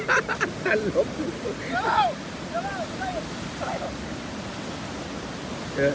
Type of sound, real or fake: real